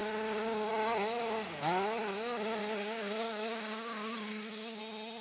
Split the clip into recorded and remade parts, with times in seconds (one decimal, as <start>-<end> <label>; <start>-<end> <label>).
0.0-0.7 remade; 0.7-2.6 recorded; 2.6-4.8 remade; 4.8-5.2 recorded